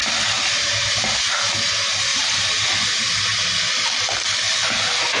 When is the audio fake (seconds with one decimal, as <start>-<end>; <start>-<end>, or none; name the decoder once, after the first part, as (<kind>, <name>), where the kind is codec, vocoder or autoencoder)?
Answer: 2.1-2.7 (vocoder, BigVGAN v2); 3.3-4.1